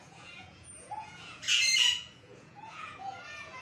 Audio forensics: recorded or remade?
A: remade